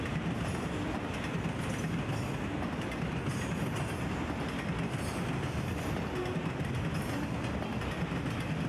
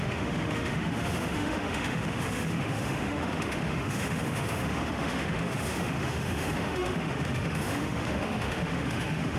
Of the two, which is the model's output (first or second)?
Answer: second